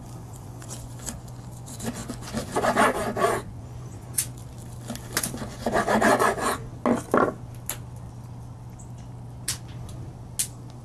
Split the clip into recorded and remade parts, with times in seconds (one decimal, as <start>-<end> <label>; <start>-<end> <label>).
0.0-4.4 remade; 4.4-5.2 recorded; 5.2-6.6 remade; 6.6-10.8 recorded